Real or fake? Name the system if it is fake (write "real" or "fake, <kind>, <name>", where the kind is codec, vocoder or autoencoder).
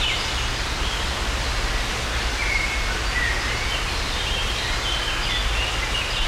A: real